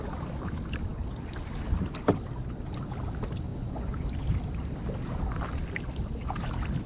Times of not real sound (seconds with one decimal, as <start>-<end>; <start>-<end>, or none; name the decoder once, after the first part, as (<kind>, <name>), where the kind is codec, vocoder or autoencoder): 3.5-4.1 (vocoder, Vocos)